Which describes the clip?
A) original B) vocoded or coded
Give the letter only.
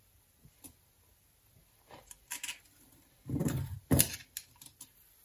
A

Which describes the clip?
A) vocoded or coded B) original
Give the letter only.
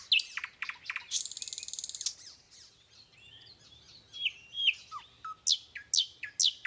B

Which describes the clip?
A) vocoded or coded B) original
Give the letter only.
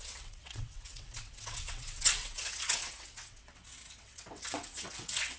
A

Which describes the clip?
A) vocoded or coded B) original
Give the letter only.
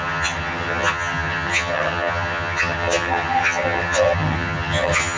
A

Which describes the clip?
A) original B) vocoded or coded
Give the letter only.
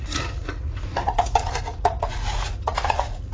B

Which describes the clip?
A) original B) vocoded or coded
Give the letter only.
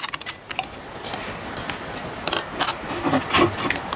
A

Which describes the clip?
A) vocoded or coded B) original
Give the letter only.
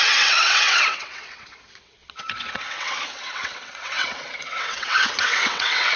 A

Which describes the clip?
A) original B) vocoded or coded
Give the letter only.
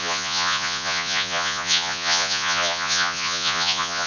B